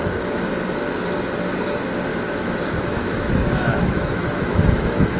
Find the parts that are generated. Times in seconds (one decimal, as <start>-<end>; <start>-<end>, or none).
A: 0.0-0.5; 2.1-5.2

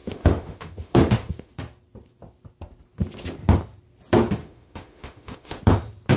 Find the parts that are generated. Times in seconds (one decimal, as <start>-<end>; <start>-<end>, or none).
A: 0.0-1.5; 4.4-5.6

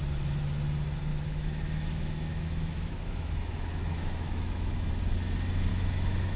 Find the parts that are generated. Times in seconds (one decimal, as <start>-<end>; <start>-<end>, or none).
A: 1.1-4.9; 5.7-6.4

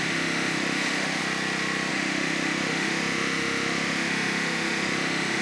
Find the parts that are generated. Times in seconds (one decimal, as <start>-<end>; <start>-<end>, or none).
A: 0.0-1.2; 1.9-5.4

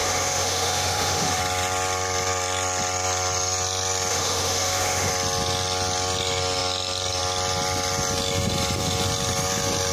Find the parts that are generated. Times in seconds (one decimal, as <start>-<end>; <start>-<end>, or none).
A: 0.0-1.4; 4.1-5.1